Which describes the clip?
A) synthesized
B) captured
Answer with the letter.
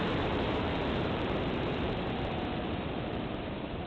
A